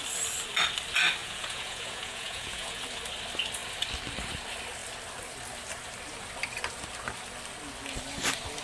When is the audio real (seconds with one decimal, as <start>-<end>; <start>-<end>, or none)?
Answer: 0.0-1.2; 2.8-8.6